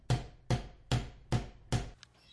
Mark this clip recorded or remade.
recorded